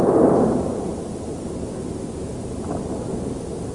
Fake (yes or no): yes